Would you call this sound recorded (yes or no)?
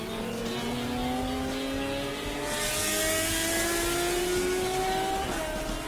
yes